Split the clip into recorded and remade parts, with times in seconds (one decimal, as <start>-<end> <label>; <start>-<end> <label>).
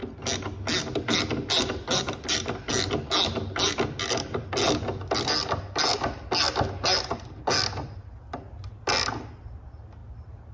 0.0-10.5 recorded